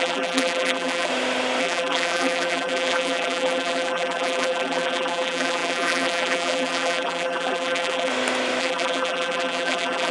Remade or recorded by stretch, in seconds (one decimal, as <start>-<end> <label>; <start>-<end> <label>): 0.0-1.1 remade; 1.1-1.6 recorded; 1.6-8.1 remade; 8.1-8.6 recorded; 8.6-10.1 remade